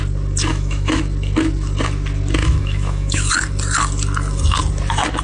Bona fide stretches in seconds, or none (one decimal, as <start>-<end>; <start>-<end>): 0.0-0.5; 1.0-2.4; 3.3-5.2